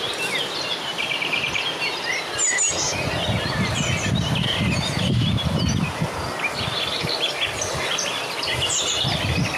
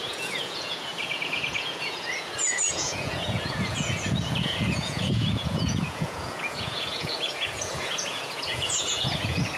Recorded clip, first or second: first